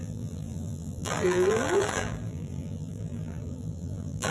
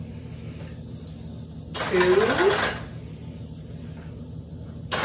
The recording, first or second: second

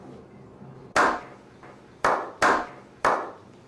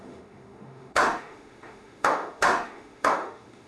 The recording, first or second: first